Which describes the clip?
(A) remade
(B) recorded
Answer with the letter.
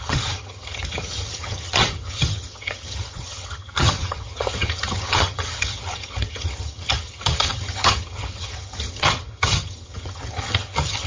A